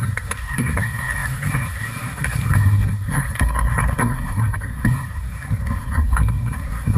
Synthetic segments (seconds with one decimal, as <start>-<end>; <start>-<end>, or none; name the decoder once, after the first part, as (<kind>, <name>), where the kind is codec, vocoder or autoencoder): 0.0-7.0 (codec, SNAC)